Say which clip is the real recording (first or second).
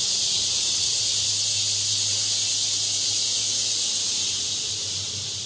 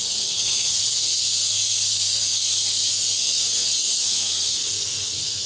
first